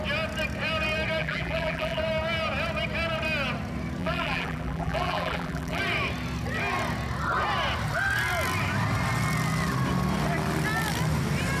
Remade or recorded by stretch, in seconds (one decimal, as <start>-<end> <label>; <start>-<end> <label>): 0.0-1.2 recorded; 1.2-2.0 remade; 2.0-4.0 recorded; 4.0-5.8 remade; 5.8-11.6 recorded